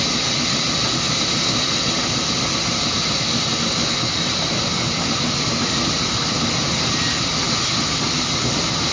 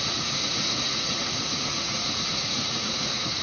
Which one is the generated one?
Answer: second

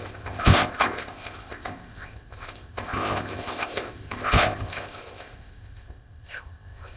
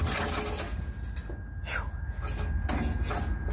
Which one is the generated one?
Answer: first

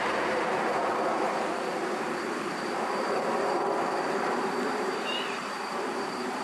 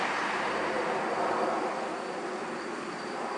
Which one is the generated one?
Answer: first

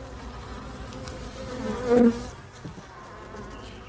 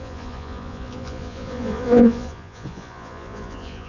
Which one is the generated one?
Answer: second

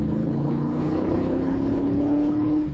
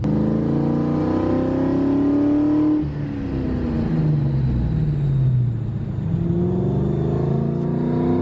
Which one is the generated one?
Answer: first